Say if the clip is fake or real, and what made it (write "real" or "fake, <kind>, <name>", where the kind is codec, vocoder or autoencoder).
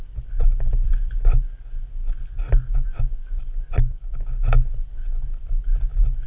real